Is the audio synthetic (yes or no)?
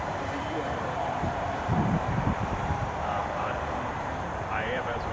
yes